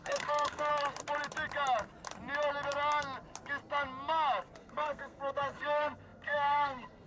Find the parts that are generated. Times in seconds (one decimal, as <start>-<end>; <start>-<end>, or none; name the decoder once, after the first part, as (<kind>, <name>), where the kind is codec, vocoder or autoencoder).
0.0-0.7 (codec, SNAC); 4.6-7.1